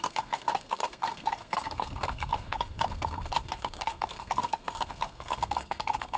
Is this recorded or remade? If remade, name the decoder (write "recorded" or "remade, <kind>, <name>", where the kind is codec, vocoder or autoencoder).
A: remade, codec, SNAC